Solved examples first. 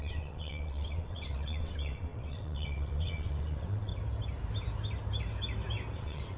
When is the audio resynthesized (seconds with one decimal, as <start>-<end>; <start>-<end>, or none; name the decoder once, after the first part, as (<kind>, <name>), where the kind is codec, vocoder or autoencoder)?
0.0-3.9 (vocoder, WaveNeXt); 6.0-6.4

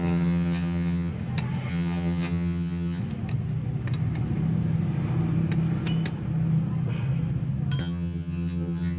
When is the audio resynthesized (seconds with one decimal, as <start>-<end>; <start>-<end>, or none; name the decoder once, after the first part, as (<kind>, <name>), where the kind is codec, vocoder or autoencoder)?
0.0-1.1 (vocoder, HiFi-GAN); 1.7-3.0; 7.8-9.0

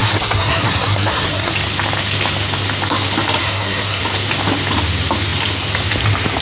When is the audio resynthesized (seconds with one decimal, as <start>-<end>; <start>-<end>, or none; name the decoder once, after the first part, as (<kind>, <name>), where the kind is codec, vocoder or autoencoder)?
0.0-1.5 (codec, SNAC); 3.4-4.0

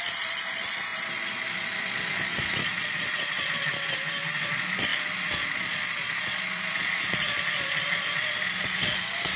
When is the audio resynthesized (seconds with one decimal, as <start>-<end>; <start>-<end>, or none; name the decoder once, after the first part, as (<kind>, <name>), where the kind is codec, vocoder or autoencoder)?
0.0-3.7 (vocoder, Vocos); 4.4-9.4